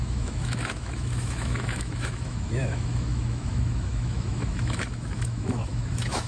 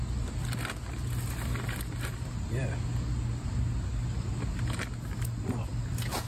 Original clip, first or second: second